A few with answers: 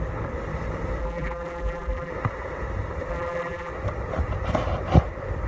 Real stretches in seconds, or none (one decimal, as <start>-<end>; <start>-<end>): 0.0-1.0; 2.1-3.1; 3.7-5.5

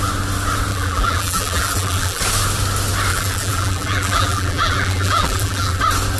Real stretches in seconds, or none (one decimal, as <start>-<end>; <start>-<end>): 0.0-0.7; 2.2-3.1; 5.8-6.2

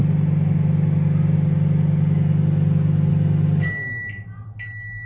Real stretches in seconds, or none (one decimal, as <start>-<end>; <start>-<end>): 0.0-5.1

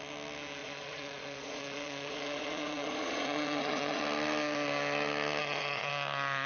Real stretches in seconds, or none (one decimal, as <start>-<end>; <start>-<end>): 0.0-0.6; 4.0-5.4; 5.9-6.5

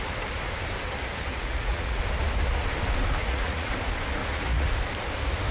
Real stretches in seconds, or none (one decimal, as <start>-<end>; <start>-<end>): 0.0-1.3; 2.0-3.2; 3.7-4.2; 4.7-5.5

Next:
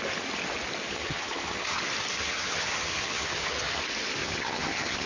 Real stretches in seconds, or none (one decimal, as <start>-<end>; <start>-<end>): 0.0-0.9; 1.8-2.2; 3.8-4.2

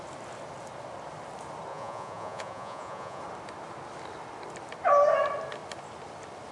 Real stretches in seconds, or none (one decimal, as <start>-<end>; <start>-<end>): 0.0-1.7; 3.2-6.5